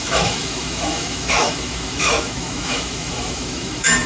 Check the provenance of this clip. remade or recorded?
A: remade